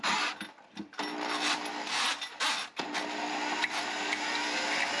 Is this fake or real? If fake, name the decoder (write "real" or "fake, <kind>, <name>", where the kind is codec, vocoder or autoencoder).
real